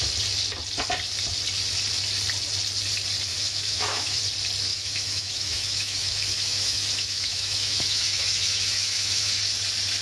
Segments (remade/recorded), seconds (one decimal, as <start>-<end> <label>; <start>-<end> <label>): 0.0-3.3 recorded; 3.3-4.2 remade; 4.2-4.7 recorded; 4.7-9.4 remade; 9.4-10.0 recorded